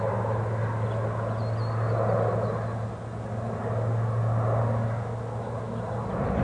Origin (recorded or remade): recorded